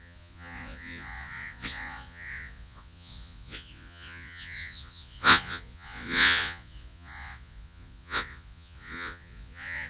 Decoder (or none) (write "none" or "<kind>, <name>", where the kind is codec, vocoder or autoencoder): vocoder, Vocos